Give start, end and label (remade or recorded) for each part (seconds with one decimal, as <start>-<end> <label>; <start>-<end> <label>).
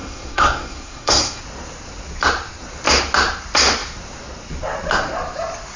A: 0.0-1.4 remade; 1.4-5.8 recorded